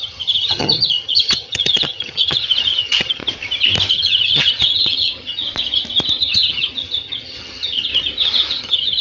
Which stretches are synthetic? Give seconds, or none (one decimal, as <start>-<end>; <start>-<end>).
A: 0.0-3.2; 3.9-5.4; 6.2-7.9; 8.5-9.0